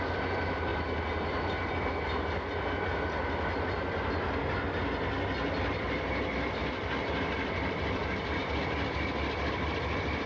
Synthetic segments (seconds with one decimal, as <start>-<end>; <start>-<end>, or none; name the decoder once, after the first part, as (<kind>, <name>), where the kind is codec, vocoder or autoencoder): 6.6-8.5 (vocoder, BigVGAN v2)